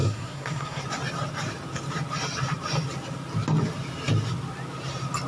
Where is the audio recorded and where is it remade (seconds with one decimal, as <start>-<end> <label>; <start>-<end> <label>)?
0.0-0.8 remade; 0.8-5.3 recorded